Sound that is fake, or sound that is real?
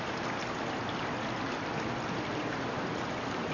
real